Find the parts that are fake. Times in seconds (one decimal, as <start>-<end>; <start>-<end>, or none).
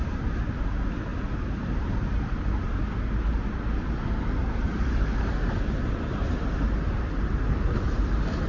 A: 0.0-1.1; 4.4-8.5